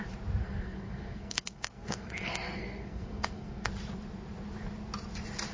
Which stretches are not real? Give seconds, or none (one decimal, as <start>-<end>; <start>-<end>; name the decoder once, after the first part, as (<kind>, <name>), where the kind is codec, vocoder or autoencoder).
0.4-3.7 (codec, SNAC)